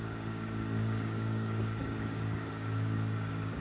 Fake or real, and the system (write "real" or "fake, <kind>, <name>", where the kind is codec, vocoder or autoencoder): fake, codec, DAC